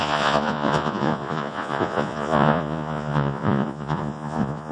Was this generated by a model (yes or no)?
yes